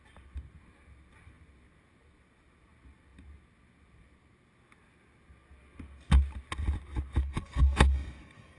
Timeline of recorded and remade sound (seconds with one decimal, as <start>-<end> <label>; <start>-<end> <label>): 0.0-7.2 recorded; 7.2-8.6 remade